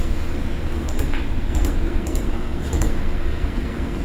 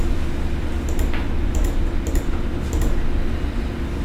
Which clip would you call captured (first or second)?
second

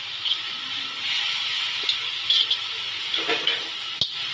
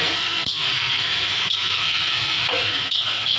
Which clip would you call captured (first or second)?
first